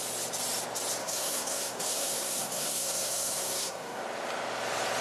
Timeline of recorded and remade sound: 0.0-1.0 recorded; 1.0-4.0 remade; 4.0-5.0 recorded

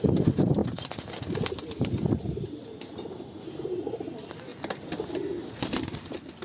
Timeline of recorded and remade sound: 0.0-6.4 recorded

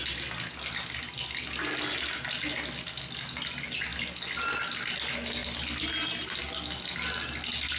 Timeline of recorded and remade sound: 0.0-5.4 recorded; 5.4-6.4 remade; 6.4-7.8 recorded